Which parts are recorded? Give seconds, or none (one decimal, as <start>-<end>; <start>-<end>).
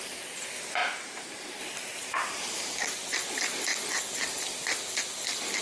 0.8-1.6; 3.7-5.6